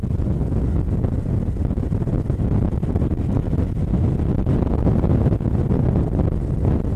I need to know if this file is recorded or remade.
recorded